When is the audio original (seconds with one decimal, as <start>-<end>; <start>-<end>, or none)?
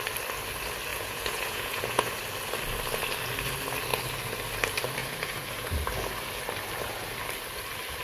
0.0-0.9; 2.2-5.0; 5.7-8.0